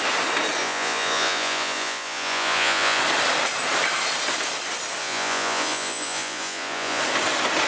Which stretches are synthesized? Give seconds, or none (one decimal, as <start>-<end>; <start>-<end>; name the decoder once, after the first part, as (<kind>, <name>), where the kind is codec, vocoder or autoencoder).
0.6-3.0 (vocoder, Vocos); 5.0-7.0

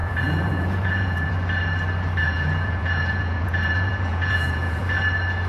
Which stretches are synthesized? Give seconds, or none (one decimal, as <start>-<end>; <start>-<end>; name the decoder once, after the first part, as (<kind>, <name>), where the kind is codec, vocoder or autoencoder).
0.0-1.3 (vocoder, Vocos); 2.2-4.8

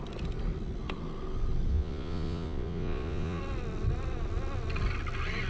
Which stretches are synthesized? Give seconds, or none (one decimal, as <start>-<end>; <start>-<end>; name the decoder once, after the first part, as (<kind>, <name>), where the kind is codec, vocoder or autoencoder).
1.7-3.4 (vocoder, Vocos)

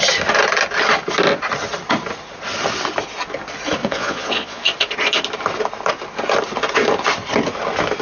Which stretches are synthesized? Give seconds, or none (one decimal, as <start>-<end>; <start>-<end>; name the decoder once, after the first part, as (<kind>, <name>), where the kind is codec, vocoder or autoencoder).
3.8-4.6 (vocoder, Vocos)

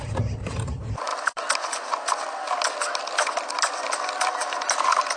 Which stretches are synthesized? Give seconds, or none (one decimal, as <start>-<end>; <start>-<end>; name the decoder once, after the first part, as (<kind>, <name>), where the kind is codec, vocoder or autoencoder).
none